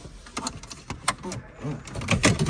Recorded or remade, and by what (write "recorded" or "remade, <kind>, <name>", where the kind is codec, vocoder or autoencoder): recorded